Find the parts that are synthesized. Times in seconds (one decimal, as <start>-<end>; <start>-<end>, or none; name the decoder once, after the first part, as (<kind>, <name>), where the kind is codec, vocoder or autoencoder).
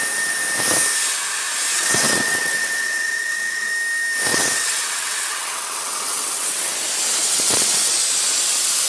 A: 1.7-3.7 (vocoder, WaveNeXt); 4.3-6.7; 7.2-7.9